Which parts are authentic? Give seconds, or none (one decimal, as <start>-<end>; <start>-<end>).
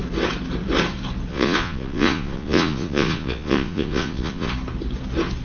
0.0-1.3; 4.5-5.4